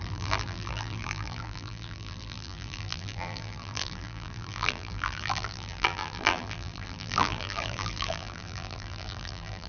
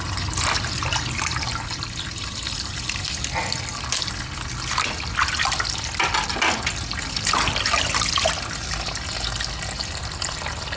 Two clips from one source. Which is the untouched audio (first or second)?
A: second